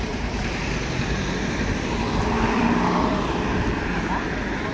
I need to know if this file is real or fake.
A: fake